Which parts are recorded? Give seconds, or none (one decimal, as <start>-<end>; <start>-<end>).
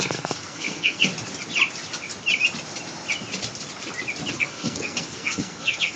1.1-4.3